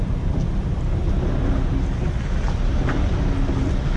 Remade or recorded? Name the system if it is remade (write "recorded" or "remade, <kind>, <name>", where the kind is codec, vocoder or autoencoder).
recorded